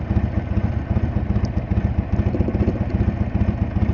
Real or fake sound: real